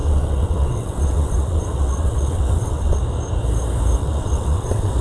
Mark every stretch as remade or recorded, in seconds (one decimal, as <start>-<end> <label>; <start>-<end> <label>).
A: 0.0-3.0 remade; 3.0-4.0 recorded; 4.0-5.0 remade